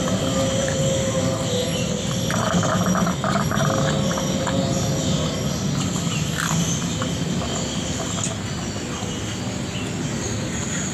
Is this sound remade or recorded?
recorded